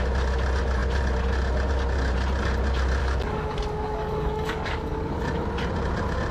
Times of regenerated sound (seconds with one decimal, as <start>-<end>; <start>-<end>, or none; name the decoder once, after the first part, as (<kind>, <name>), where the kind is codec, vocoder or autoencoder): 3.0-5.1 (codec, DAC)